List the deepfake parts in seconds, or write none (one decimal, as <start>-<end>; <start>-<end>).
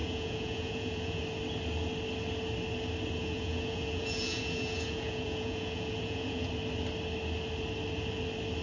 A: 0.0-1.2; 3.2-6.5